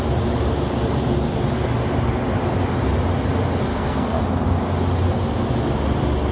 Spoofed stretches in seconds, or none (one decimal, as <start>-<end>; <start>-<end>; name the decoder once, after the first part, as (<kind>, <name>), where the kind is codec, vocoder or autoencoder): 3.7-4.2 (codec, SNAC)